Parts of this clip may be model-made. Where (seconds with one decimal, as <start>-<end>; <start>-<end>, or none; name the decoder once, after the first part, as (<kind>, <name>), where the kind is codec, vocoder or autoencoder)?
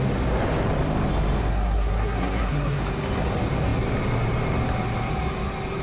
1.5-2.8 (codec, SNAC)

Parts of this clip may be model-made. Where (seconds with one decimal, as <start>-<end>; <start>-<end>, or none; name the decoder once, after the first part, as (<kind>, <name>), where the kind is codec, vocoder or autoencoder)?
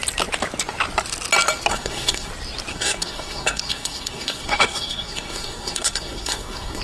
1.7-2.3 (codec, SNAC); 2.7-6.8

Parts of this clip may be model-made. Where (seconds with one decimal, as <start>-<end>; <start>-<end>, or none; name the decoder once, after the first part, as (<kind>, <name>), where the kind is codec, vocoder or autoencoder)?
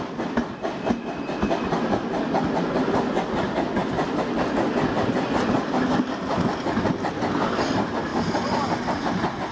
none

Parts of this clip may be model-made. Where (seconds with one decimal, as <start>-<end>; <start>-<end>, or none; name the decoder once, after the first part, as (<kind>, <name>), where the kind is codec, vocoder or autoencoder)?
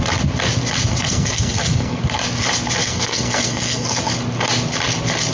0.9-2.0 (codec, SNAC); 2.8-4.0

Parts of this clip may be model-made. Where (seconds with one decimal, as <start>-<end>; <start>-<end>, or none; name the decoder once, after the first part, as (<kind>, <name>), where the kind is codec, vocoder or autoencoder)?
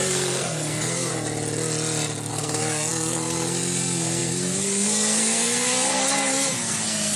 0.0-1.1 (codec, SNAC); 2.3-7.2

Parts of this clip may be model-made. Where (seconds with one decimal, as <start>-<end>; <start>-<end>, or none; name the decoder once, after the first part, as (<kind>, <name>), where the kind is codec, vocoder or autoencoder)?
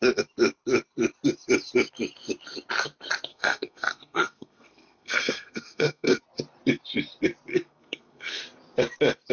3.3-6.2 (codec, SNAC); 7.5-8.4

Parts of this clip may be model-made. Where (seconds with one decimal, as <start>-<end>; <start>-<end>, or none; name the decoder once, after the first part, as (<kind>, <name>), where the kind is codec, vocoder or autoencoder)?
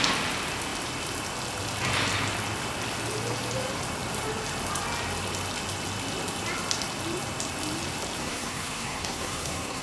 8.2-9.8 (codec, SNAC)